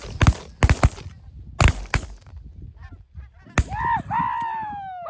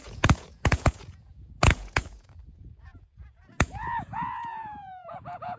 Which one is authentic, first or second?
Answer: first